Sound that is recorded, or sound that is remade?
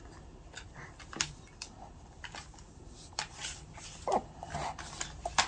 recorded